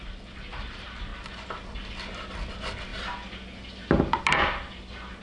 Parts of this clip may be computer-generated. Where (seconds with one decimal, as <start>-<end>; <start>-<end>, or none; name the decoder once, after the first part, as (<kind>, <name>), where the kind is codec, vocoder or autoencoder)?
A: none